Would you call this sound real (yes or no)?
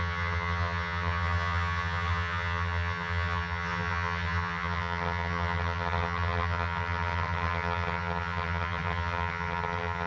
no